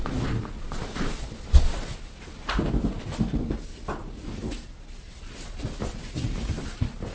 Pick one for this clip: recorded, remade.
recorded